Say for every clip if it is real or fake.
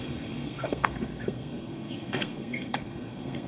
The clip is fake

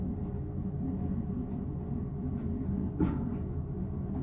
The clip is real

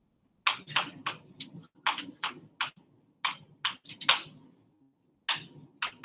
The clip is real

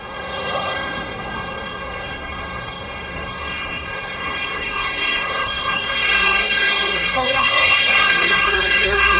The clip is fake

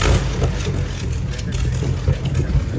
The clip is real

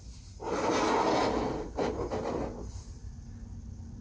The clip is real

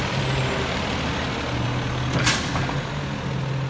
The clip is real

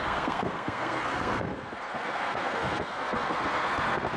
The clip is fake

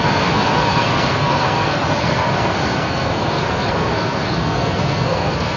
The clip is fake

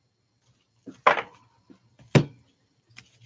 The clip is real